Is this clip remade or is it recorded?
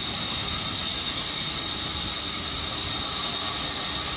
recorded